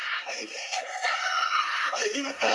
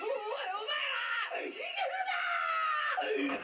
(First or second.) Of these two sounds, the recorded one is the second